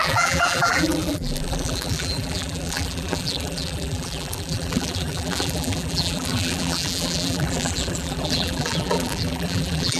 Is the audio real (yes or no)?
no